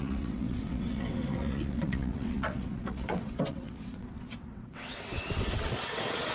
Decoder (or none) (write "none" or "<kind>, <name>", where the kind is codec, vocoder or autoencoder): vocoder, WaveNeXt